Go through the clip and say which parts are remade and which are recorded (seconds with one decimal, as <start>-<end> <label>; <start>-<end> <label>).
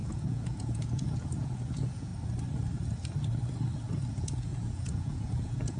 0.0-2.1 remade; 2.1-4.1 recorded; 4.1-5.8 remade